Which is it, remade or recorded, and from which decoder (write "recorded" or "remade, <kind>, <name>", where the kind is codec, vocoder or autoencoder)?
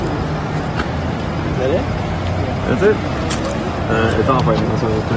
recorded